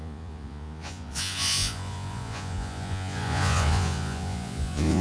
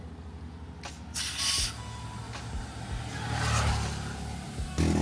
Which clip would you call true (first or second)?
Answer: second